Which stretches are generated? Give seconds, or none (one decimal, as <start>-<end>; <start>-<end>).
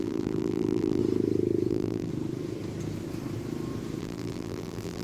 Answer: 0.0-1.0; 1.7-2.1; 4.0-5.0